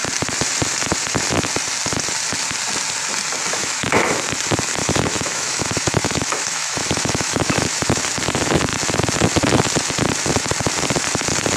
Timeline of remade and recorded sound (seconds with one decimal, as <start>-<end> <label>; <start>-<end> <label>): 0.0-3.5 recorded; 3.5-4.2 remade; 4.2-4.8 recorded; 4.8-8.0 remade; 8.0-11.6 recorded